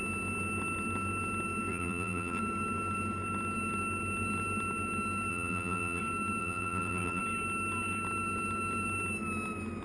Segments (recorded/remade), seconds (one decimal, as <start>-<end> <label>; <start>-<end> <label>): 0.0-1.7 recorded; 1.7-2.4 remade; 2.4-5.3 recorded; 5.3-6.0 remade; 6.0-6.4 recorded; 6.4-7.2 remade; 7.2-9.8 recorded